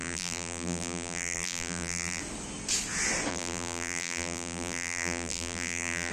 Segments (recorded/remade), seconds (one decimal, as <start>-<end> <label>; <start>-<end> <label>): 0.0-2.2 remade; 2.2-3.3 recorded; 3.3-6.1 remade